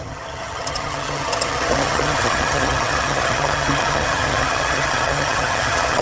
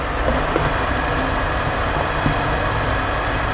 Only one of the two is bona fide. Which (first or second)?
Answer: second